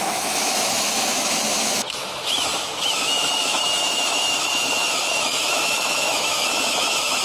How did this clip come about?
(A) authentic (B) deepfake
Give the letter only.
B